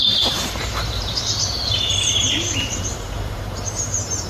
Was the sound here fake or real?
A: fake